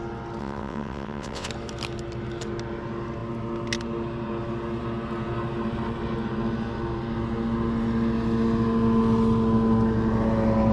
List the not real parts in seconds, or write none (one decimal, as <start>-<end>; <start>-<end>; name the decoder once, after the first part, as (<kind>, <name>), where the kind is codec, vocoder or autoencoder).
0.4-1.5 (vocoder, WaveNeXt)